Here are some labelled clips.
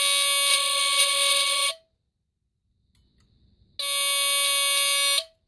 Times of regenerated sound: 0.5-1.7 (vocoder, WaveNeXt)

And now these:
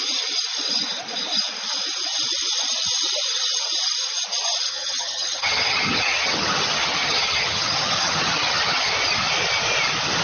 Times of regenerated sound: 4.7-8.9 (vocoder, HiFi-GAN)